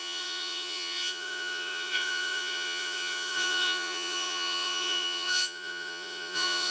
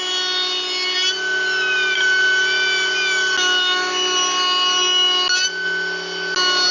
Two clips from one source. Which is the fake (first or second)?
first